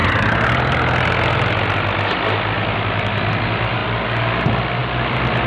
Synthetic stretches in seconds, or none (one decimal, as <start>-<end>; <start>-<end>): 3.8-4.3; 4.8-5.5